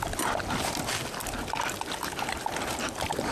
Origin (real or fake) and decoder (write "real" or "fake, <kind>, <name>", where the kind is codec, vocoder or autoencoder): real